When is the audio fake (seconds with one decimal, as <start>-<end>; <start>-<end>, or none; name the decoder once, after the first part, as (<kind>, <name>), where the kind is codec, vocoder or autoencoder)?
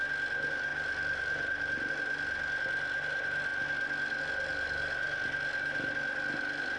none